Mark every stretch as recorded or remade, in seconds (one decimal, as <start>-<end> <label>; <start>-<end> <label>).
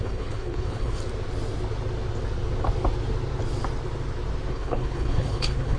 0.0-1.0 remade; 1.0-4.5 recorded; 4.5-5.8 remade